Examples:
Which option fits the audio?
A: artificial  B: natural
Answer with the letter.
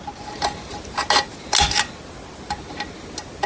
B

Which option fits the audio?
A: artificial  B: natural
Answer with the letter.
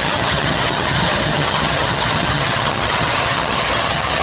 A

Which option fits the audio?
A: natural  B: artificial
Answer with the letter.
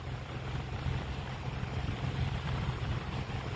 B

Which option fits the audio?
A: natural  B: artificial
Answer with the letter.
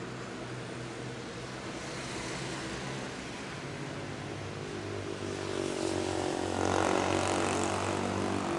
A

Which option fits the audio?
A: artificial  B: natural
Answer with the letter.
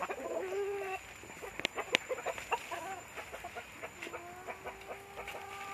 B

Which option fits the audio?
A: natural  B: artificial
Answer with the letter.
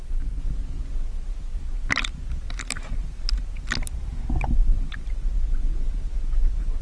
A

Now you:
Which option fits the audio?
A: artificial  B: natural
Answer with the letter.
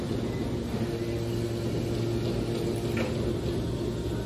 B